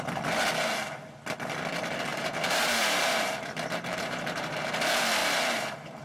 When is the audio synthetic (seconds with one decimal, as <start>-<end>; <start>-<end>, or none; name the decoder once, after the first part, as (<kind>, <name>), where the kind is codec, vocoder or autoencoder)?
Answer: 2.1-4.5 (vocoder, BigVGAN v2); 5.2-6.0